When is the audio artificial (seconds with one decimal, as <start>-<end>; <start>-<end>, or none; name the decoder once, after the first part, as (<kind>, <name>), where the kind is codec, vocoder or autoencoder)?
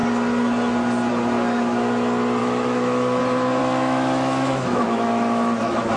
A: 2.4-3.2 (autoencoder, DAC-VAE); 3.6-6.0